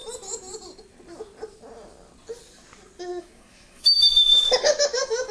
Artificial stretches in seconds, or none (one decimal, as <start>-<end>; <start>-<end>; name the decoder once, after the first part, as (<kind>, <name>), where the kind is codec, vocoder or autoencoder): 3.2-5.3 (autoencoder, DAC-VAE)